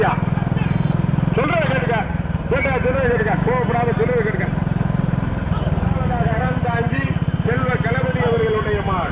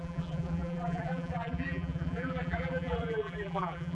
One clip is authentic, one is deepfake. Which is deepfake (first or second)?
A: second